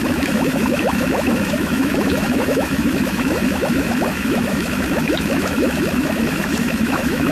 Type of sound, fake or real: fake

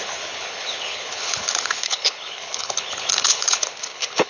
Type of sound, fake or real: fake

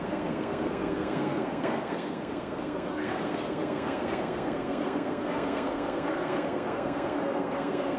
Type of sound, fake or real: fake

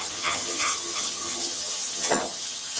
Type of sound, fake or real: fake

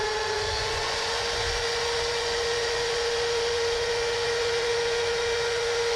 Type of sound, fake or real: fake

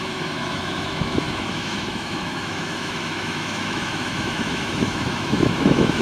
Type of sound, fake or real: fake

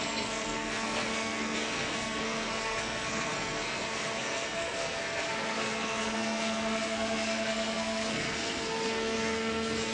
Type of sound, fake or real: fake